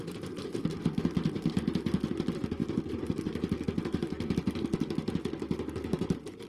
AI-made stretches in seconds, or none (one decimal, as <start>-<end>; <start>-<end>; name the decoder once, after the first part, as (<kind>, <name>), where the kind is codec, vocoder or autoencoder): none